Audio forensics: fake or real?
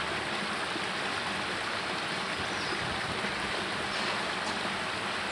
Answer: real